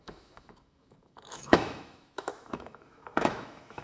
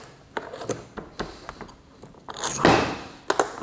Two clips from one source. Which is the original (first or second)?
second